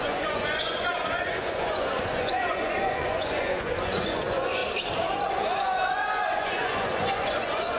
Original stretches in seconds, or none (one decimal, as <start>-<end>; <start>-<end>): 4.6-5.2